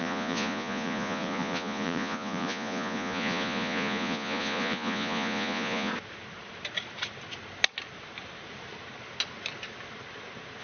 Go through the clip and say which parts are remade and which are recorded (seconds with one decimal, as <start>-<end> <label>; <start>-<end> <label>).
0.0-5.9 remade; 5.9-10.6 recorded